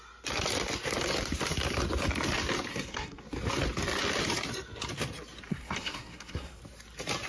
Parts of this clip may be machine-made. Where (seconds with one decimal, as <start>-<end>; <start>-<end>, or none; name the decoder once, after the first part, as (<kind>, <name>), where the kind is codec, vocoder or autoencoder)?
2.7-3.2 (codec, SNAC); 5.5-6.6